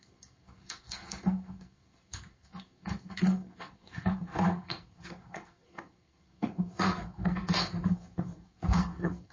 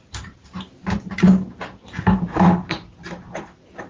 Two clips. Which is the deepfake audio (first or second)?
first